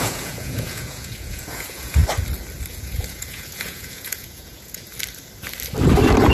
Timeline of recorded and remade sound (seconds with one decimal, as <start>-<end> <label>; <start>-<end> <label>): 0.0-2.0 remade; 2.0-2.7 recorded; 2.7-4.9 remade; 4.9-6.3 recorded